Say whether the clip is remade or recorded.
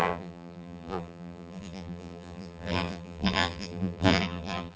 remade